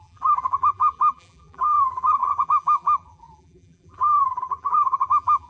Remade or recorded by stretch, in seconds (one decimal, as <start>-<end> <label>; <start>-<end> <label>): 0.0-5.5 remade